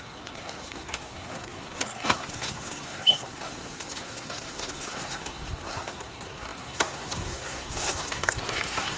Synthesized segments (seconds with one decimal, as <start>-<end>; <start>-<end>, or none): 0.0-9.0